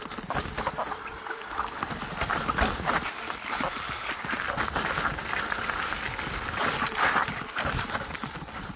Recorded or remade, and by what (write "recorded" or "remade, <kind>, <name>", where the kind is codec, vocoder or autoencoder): recorded